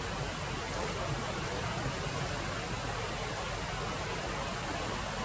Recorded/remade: recorded